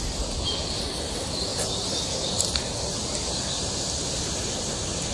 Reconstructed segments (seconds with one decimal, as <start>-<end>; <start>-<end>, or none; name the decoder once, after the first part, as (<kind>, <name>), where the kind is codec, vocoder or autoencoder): none